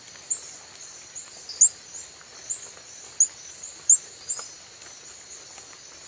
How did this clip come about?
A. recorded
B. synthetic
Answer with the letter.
A